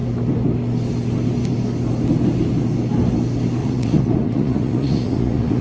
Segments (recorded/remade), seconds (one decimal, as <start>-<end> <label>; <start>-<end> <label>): 0.0-3.6 recorded; 3.6-5.6 remade